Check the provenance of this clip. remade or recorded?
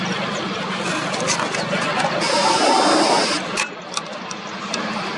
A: recorded